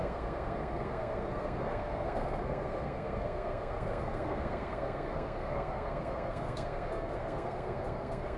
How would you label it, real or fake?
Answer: fake